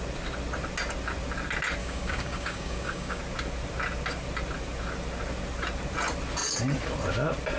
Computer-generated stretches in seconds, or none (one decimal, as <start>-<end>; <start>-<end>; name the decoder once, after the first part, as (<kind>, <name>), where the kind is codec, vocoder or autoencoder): 1.8-3.2 (codec, DAC)